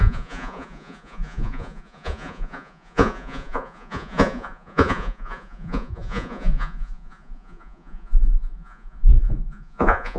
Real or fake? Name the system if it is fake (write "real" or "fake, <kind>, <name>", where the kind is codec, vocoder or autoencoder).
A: fake, vocoder, Vocos